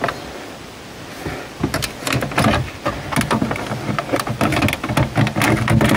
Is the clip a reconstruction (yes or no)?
no